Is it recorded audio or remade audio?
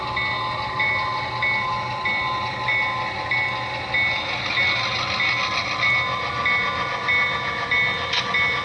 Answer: recorded